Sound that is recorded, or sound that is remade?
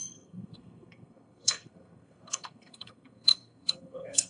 remade